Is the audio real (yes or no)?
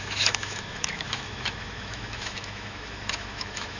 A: no